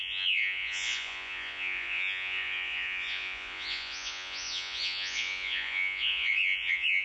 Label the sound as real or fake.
fake